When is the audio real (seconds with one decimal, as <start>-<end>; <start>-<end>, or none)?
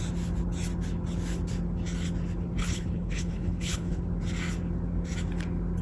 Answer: 0.0-2.6; 4.0-5.8